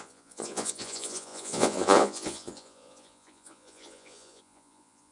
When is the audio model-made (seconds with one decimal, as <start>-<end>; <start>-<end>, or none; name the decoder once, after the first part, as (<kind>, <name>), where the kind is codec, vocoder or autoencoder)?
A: 0.0-5.1 (vocoder, Vocos)